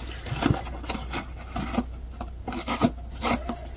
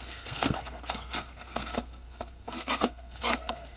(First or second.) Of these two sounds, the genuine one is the first